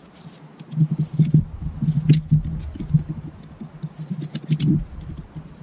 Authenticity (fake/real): real